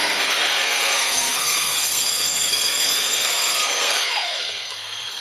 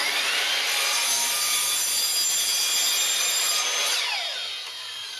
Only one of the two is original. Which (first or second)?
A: second